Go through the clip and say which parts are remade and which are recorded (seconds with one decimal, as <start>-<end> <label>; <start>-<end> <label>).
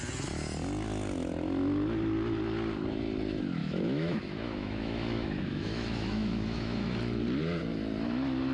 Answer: 0.0-3.6 recorded; 3.6-7.0 remade; 7.0-8.5 recorded